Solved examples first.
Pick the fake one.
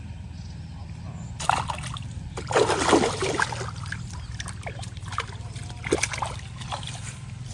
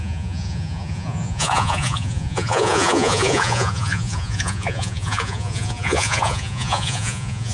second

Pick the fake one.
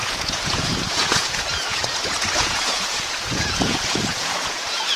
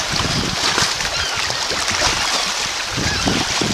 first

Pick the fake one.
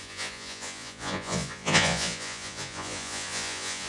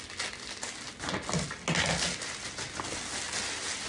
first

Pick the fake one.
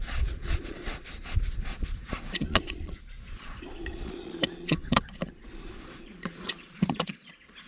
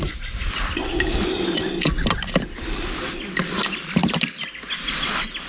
first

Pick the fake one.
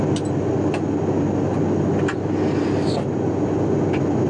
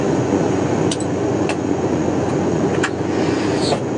second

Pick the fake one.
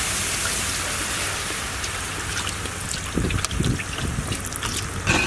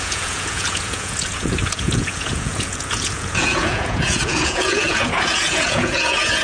second